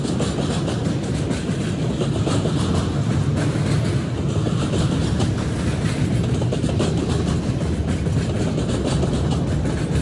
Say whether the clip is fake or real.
real